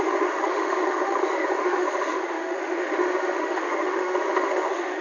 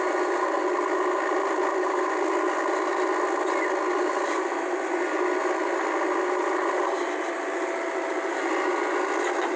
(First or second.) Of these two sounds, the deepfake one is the first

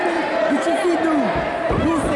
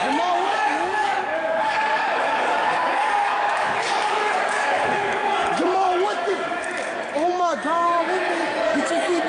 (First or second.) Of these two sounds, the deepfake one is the second